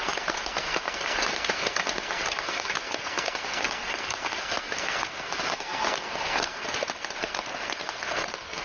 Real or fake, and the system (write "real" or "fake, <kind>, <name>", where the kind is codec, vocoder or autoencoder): fake, codec, SNAC